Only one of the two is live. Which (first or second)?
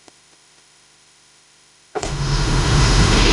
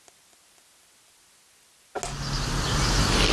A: second